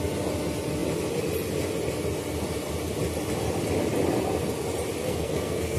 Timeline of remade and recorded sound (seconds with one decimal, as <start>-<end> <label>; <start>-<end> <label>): 0.0-5.0 recorded; 5.0-5.8 remade